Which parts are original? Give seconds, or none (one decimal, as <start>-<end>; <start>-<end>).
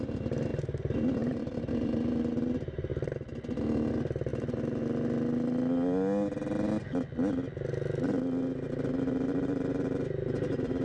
2.9-3.9; 4.3-9.1